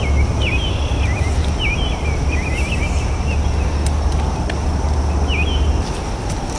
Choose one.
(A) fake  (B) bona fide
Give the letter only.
B